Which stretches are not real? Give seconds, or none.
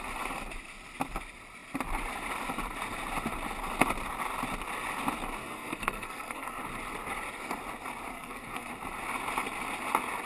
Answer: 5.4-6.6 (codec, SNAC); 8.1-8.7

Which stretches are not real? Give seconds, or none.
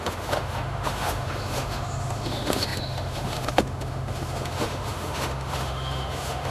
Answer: 0.0-6.5 (autoencoder, DAC-VAE)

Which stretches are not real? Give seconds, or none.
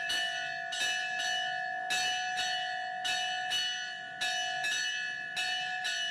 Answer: none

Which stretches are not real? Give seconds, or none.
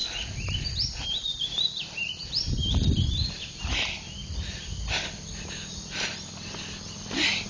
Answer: none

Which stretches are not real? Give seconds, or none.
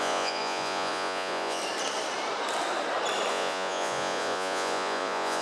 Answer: 0.0-1.6 (vocoder, Vocos); 3.3-5.4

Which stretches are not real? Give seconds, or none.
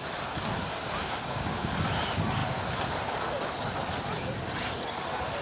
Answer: 1.0-1.7 (codec, DAC)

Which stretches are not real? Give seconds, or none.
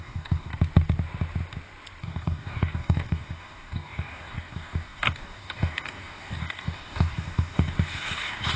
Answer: 0.0-0.5 (codec, DAC); 2.0-8.6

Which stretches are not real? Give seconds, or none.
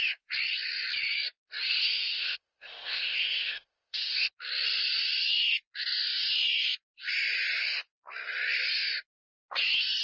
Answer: 1.7-4.3 (codec, ZipCodec)